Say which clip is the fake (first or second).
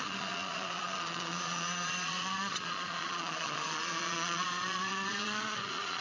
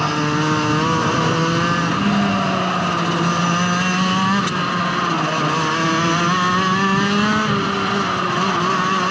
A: first